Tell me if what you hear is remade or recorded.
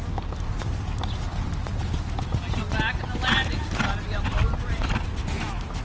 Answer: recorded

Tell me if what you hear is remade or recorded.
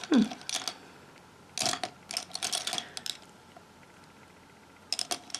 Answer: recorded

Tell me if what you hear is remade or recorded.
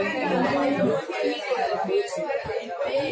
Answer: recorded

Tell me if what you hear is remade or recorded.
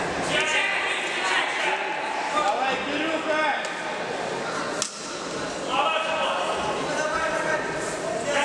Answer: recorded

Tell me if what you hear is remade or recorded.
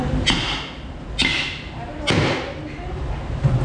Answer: recorded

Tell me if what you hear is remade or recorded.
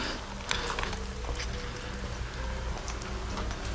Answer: recorded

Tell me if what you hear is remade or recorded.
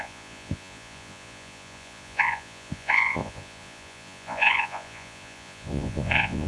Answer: remade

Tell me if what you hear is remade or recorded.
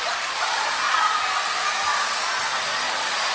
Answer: recorded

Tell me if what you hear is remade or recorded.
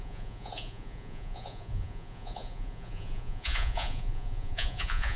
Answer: remade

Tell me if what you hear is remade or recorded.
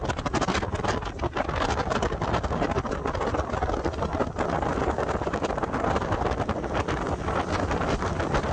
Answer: recorded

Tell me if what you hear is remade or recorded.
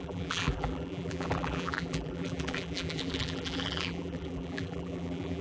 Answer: remade